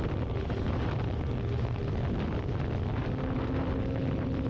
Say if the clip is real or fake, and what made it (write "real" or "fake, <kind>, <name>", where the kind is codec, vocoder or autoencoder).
real